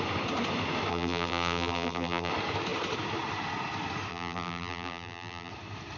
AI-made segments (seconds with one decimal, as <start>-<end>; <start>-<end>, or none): 0.9-2.3; 4.1-5.5